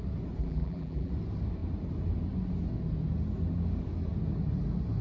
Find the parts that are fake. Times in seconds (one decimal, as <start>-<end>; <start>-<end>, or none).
0.4-1.1